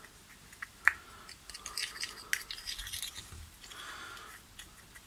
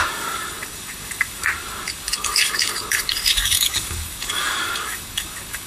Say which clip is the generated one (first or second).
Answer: second